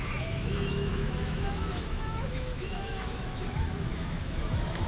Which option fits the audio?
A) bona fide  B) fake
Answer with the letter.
B